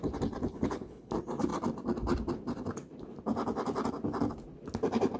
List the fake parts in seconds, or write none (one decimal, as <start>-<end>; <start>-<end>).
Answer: 0.4-1.1